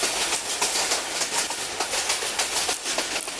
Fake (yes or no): no